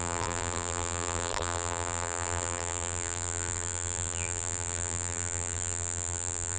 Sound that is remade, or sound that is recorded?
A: remade